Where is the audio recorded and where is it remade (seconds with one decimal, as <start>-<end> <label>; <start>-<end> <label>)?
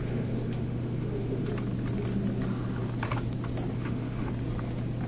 0.0-1.5 remade; 1.5-3.7 recorded; 3.7-4.3 remade; 4.3-5.1 recorded